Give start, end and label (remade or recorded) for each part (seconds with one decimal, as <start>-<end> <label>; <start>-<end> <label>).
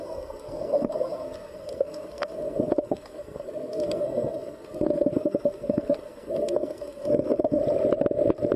0.0-7.6 remade; 7.6-8.6 recorded